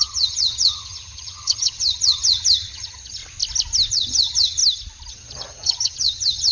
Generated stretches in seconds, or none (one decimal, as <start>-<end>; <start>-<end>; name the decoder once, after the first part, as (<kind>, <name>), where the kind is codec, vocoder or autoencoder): 0.0-3.2 (vocoder, HiFi-GAN); 3.9-4.6; 5.1-6.5